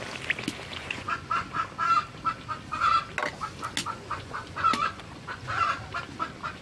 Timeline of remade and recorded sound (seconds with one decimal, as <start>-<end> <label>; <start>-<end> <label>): 0.0-0.8 recorded; 0.8-1.5 remade; 1.5-3.8 recorded; 3.8-5.7 remade; 5.7-6.6 recorded